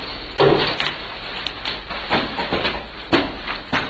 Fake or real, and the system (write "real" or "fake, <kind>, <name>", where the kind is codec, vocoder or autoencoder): real